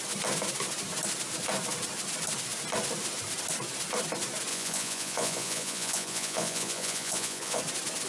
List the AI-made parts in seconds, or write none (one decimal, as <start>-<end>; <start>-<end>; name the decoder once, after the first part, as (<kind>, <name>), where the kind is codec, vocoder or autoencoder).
4.5-7.6 (vocoder, Vocos)